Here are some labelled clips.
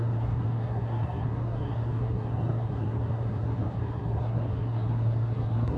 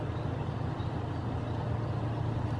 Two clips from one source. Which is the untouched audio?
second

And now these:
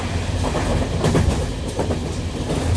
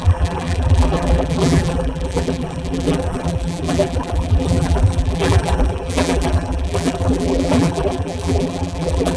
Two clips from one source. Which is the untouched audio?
first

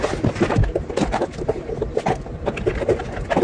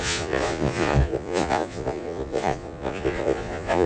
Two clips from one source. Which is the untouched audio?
first